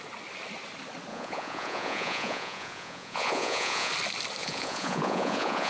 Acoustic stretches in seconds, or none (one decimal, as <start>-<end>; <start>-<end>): 0.0-1.1; 3.9-4.4